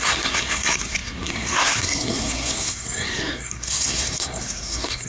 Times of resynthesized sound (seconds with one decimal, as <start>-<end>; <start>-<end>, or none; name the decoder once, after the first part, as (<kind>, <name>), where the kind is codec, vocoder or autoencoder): 0.0-5.1 (codec, SNAC)

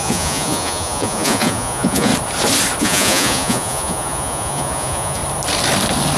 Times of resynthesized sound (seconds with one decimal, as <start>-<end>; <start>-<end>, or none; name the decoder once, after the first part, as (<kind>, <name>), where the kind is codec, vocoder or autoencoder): 0.0-2.1 (vocoder, Vocos); 2.8-5.2

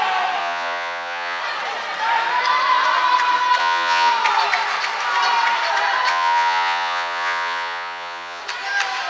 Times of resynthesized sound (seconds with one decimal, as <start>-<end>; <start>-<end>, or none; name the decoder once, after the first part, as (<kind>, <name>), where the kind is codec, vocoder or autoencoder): 0.4-1.4 (vocoder, Vocos); 3.6-4.1; 6.1-8.4